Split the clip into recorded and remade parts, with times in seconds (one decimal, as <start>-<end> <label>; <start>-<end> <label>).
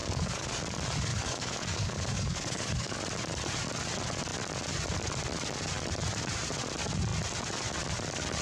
0.0-0.6 remade; 0.6-1.1 recorded; 1.1-3.0 remade; 3.0-8.4 recorded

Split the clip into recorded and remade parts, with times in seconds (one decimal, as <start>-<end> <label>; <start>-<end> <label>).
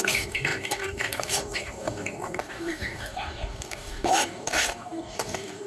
0.0-5.7 remade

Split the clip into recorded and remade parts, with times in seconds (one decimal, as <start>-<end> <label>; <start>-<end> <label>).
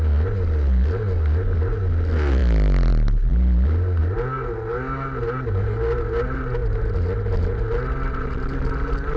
0.0-9.2 recorded